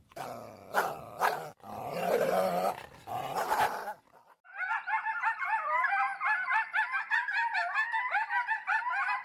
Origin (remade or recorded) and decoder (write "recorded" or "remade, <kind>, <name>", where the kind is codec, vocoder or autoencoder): remade, vocoder, BigVGAN v2